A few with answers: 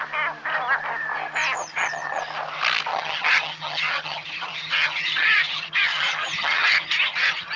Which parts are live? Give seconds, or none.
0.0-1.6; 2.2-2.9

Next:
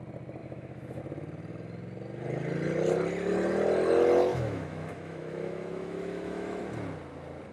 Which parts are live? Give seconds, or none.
0.0-0.4; 1.0-4.3; 6.6-7.5